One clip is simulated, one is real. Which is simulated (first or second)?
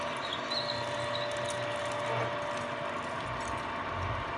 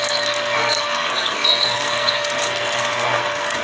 second